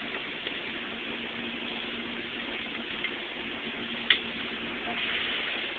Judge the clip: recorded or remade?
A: recorded